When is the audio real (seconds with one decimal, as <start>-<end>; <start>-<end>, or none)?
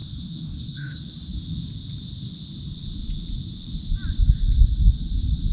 1.0-5.5